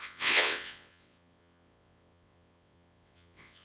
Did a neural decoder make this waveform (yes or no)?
yes